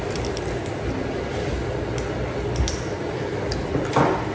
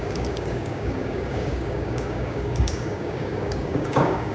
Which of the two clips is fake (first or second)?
second